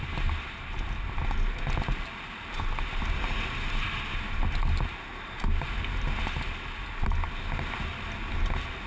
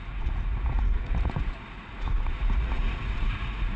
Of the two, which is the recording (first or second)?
first